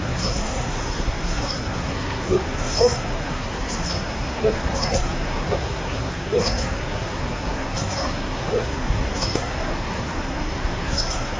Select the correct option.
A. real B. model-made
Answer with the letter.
B